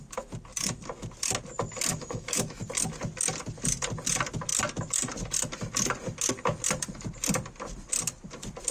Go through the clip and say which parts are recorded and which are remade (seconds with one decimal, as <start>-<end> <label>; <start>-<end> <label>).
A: 0.0-1.9 recorded; 1.9-2.6 remade; 2.6-8.7 recorded